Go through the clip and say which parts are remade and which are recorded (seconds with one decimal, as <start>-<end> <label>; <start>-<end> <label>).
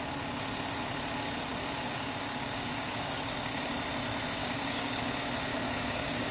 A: 0.0-1.5 recorded; 1.5-3.7 remade; 3.7-4.4 recorded; 4.4-5.0 remade; 5.0-5.5 recorded; 5.5-6.3 remade